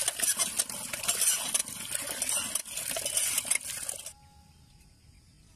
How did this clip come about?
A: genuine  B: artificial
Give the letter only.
A